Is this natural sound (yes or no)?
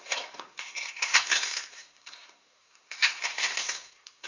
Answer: no